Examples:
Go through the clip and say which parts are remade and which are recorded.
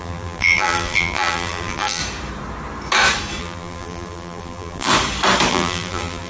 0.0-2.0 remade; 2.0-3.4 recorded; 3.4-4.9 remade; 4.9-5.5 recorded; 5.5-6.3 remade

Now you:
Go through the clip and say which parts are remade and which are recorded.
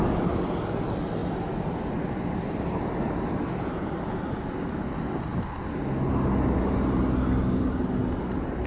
0.0-8.7 recorded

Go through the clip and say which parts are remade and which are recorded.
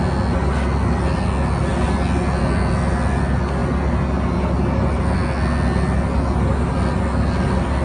0.0-7.8 recorded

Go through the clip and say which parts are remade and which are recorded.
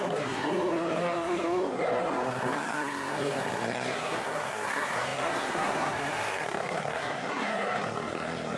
0.0-8.6 remade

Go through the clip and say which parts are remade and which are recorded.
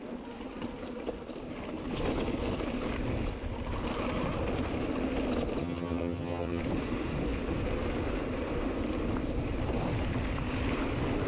0.0-5.6 recorded; 5.6-6.6 remade; 6.6-11.3 recorded